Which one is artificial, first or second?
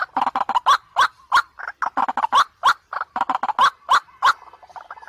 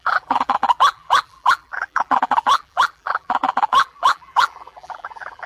second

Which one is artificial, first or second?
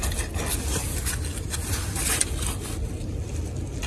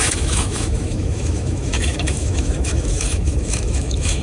second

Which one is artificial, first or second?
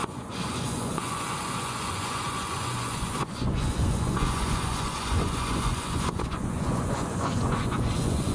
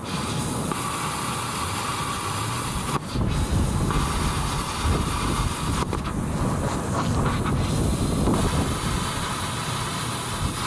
first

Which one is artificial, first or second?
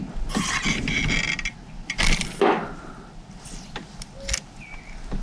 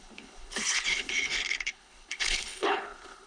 second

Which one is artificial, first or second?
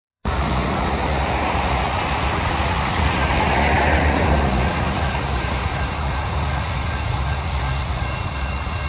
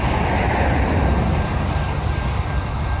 first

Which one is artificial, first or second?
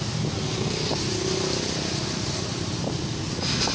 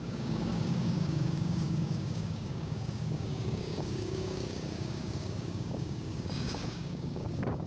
second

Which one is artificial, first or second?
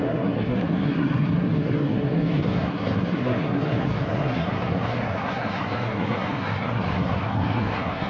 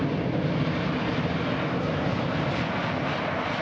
first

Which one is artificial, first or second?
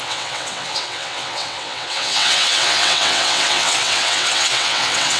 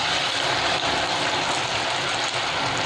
first